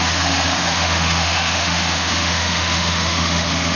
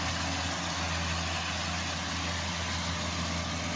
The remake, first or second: first